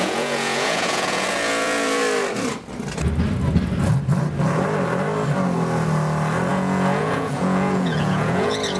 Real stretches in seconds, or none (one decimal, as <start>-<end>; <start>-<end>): 2.0-6.5